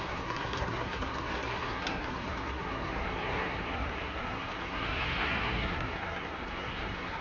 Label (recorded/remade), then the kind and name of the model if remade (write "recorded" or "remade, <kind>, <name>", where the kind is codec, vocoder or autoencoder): remade, codec, SNAC